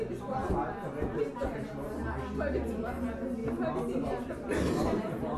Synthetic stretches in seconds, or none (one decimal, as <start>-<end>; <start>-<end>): none